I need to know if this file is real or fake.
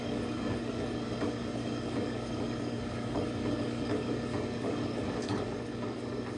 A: fake